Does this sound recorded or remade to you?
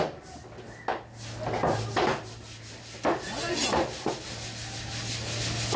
recorded